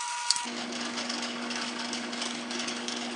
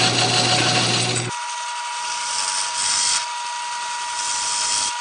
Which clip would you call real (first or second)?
second